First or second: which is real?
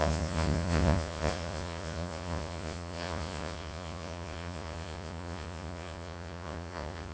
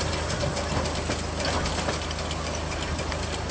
second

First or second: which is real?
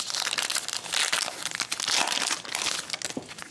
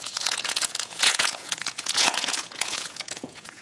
first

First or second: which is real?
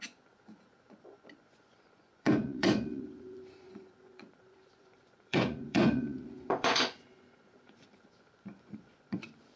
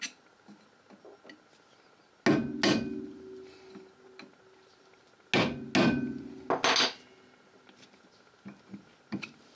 second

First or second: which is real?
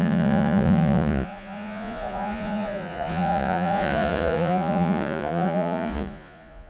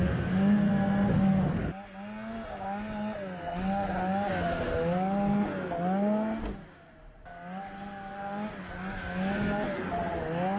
second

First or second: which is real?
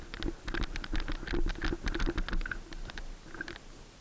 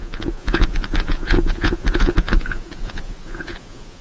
first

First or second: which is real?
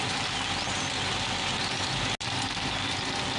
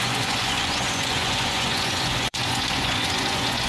first